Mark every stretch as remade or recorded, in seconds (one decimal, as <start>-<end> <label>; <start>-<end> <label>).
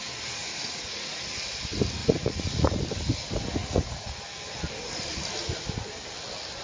0.0-0.4 recorded; 0.4-1.2 remade; 1.2-2.0 recorded; 2.0-2.8 remade; 2.8-3.6 recorded; 3.6-4.2 remade; 4.2-6.6 recorded